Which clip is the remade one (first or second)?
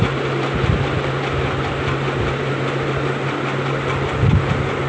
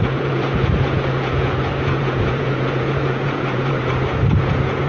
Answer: second